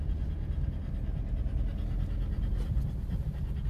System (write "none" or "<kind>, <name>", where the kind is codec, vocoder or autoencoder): none